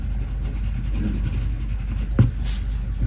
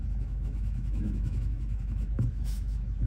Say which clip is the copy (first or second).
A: second